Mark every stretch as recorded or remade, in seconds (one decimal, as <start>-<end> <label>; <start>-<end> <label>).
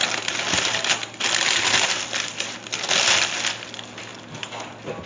0.0-5.1 recorded